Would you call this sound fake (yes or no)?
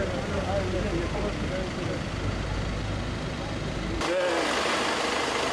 no